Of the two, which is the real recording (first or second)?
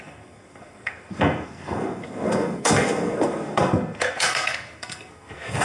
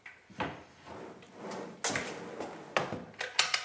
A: second